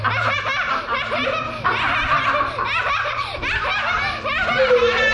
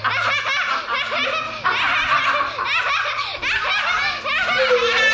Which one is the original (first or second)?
second